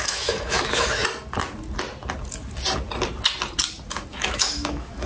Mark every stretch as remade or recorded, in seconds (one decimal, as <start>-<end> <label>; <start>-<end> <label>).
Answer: 0.0-1.0 remade; 1.0-4.1 recorded; 4.1-5.1 remade